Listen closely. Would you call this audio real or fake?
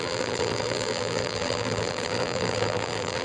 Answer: fake